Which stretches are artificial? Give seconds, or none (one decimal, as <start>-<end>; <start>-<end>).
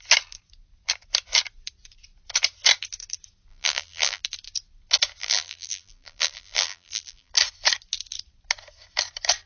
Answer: 3.5-4.2; 5.2-7.3